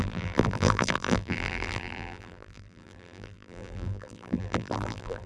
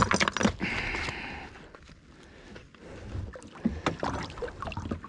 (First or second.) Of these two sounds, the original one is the second